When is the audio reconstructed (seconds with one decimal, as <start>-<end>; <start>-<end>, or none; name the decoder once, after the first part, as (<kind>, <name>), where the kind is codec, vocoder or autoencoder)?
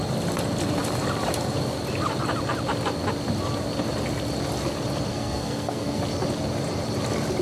5.1-6.0 (codec, SNAC)